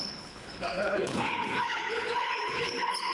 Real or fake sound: fake